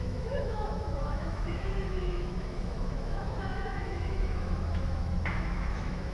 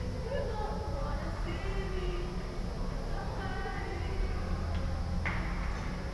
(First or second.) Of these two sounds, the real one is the second